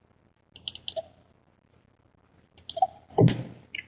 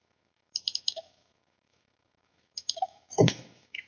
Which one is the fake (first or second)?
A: second